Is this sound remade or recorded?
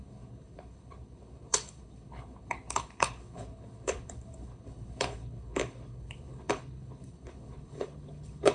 remade